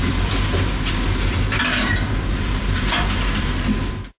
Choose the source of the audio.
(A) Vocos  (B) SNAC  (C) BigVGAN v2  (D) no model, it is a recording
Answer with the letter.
C